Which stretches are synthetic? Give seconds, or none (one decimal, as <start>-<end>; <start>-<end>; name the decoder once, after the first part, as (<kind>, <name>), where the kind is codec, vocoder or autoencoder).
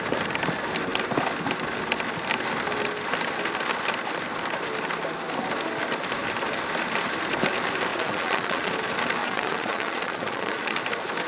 7.9-8.7 (vocoder, Vocos); 9.2-10.8